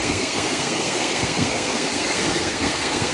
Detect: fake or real fake